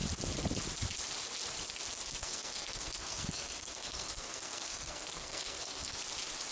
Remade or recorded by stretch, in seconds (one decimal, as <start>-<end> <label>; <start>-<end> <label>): 0.0-2.2 recorded; 2.2-6.0 remade; 6.0-6.5 recorded